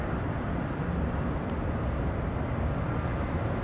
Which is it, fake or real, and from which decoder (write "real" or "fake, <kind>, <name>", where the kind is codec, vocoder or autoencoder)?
real